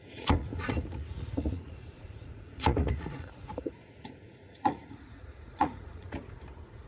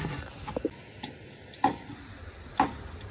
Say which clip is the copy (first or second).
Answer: first